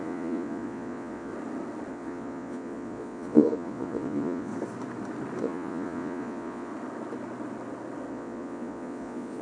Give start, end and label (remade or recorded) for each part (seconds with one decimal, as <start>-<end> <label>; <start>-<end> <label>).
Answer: 0.0-1.3 remade; 1.3-1.9 recorded; 1.9-4.5 remade; 4.5-5.4 recorded; 5.4-6.7 remade; 6.7-8.1 recorded; 8.1-9.4 remade